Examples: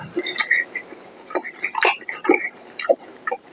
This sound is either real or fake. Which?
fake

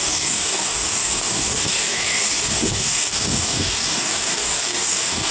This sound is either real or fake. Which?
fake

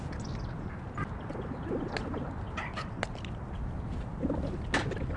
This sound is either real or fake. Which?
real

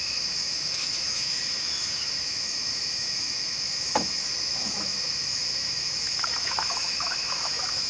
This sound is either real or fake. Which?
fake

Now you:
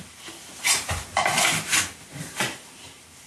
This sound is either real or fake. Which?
fake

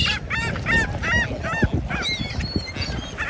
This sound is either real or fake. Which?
real